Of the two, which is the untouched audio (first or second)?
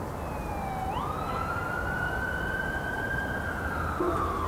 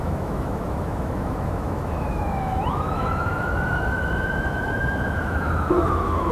first